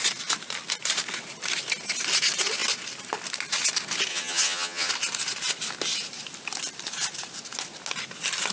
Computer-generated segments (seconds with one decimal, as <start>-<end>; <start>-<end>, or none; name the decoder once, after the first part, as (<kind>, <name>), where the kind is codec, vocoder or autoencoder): 4.1-4.9 (vocoder, HiFi-GAN)